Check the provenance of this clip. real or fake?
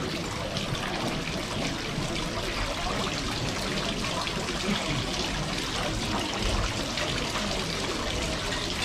real